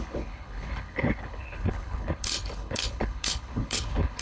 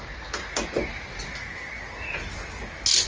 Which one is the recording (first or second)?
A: second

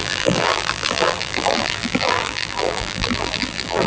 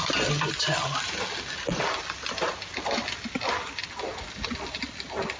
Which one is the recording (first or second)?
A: second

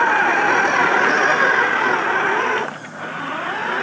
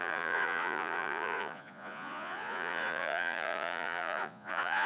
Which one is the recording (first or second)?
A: first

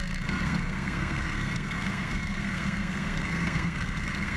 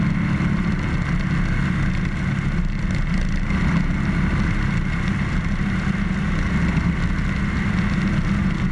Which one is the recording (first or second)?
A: second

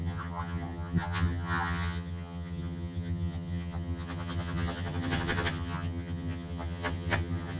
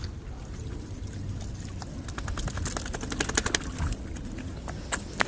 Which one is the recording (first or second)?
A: second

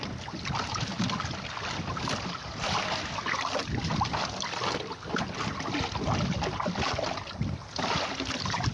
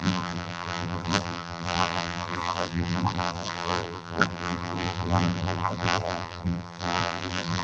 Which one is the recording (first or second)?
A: first